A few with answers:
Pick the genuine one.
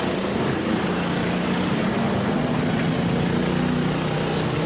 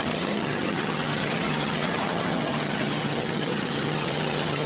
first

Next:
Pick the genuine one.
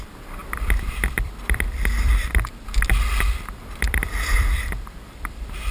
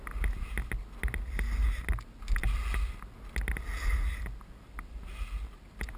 second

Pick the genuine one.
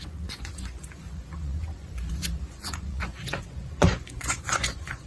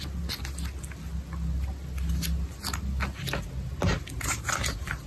second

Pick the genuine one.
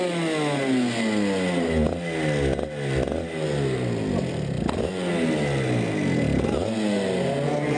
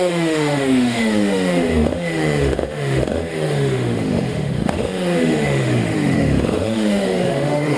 first